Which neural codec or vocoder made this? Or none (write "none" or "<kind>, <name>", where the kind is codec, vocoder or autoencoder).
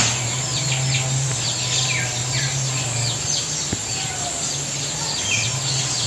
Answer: none